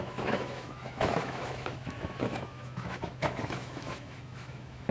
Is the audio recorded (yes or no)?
no